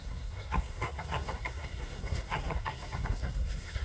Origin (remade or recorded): remade